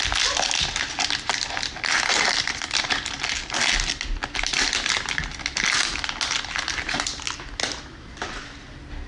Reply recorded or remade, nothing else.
recorded